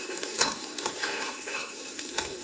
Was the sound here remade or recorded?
remade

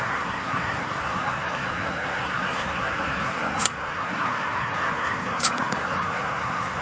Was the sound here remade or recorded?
remade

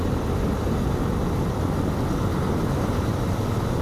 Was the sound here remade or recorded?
recorded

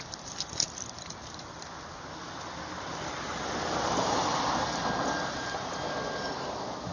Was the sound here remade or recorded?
recorded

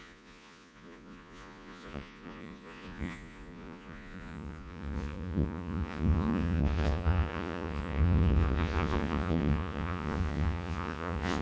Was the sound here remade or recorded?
remade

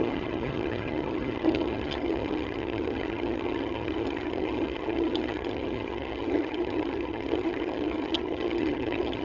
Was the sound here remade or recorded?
remade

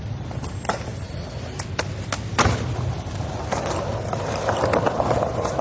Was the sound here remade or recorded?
recorded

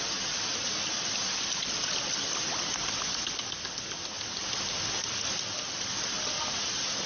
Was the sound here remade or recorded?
recorded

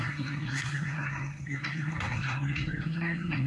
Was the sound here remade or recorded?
remade